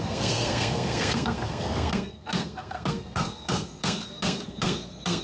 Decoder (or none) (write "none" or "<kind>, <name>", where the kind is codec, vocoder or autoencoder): codec, SNAC